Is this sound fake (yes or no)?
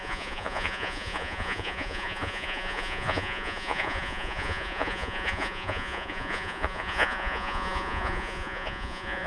yes